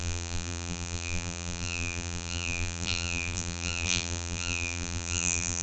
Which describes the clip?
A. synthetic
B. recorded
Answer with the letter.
A